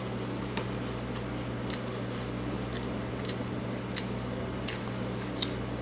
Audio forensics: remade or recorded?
recorded